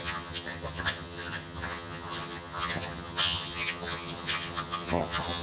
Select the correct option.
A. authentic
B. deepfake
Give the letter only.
B